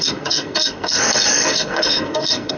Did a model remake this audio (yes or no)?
yes